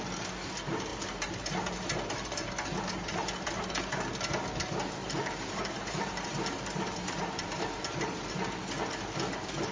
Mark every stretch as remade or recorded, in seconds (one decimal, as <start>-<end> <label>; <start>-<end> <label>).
0.0-0.9 recorded; 0.9-4.2 remade; 4.2-5.0 recorded; 5.0-8.3 remade; 8.3-9.7 recorded